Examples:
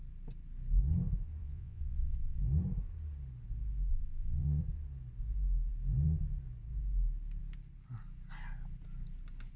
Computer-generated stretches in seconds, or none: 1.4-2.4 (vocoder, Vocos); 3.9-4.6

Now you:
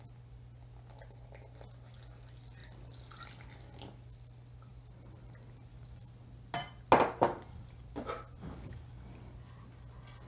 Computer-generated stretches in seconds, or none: none

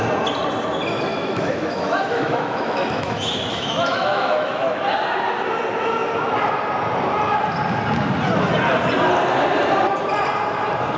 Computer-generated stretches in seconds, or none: 1.1-4.8 (autoencoder, DAC-VAE)

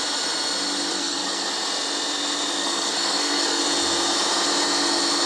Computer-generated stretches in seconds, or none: 0.9-1.5 (codec, SNAC); 2.6-3.6

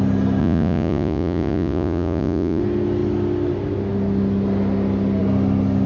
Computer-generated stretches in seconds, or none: 0.4-2.6 (vocoder, Vocos)